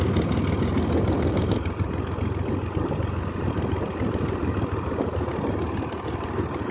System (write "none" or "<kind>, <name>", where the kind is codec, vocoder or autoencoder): none